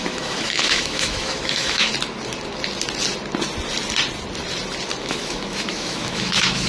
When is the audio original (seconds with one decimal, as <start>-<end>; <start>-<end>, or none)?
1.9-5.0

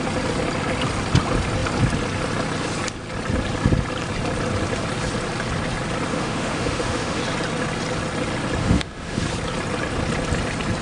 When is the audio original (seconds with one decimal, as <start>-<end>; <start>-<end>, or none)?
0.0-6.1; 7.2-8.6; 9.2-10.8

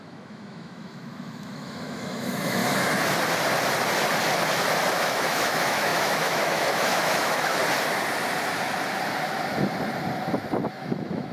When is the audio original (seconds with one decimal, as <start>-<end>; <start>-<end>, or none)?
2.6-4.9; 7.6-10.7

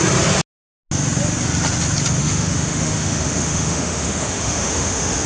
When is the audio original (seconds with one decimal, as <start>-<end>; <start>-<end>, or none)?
0.0-2.2